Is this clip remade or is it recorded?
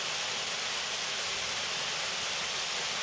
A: remade